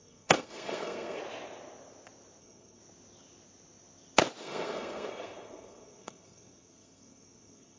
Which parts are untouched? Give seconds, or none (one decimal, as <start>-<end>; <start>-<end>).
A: 1.2-2.4; 2.8-4.4